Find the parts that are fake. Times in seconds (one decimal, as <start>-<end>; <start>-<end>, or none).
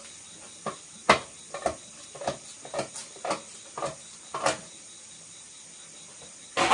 none